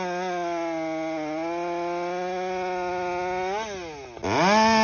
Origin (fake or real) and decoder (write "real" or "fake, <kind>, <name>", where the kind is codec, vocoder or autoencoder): real